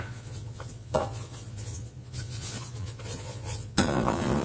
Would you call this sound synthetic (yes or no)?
yes